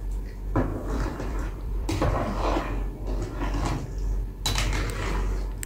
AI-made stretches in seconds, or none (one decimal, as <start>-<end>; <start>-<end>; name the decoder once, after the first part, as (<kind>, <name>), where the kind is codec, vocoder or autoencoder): 0.7-2.6 (vocoder, BigVGAN v2)